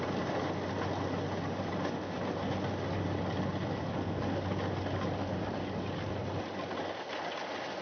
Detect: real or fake real